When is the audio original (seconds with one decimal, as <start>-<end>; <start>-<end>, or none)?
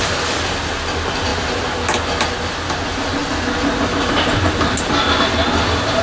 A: 0.0-6.0